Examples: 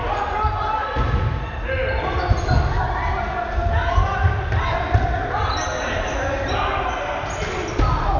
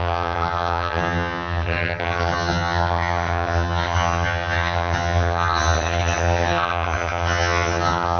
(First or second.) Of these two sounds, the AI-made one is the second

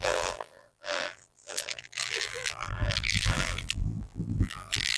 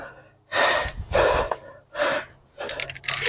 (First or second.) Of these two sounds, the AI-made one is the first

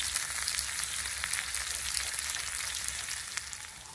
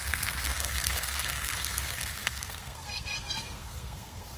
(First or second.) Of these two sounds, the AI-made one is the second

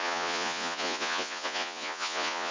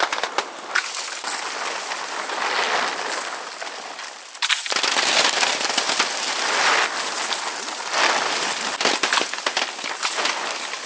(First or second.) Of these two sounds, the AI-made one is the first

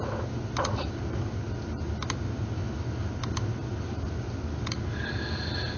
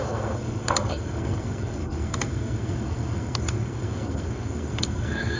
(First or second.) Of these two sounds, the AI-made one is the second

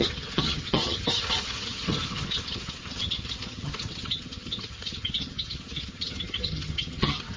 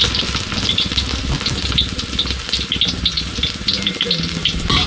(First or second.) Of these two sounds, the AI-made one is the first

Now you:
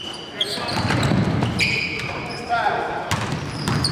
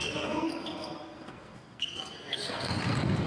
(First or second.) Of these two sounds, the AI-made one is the second